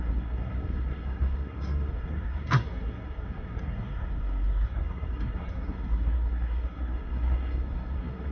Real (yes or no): no